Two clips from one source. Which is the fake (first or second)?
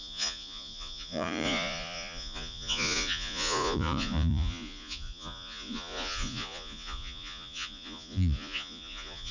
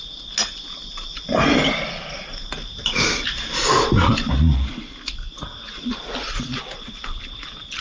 first